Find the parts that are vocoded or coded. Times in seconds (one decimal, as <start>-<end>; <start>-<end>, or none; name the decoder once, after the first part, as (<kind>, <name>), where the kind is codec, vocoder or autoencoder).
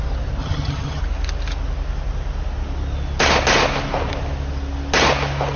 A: 0.4-1.0 (vocoder, HiFi-GAN)